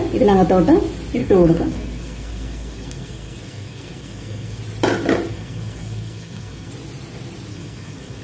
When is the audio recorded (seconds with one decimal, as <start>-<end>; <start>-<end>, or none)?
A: 0.0-1.2; 4.6-5.3; 6.7-7.5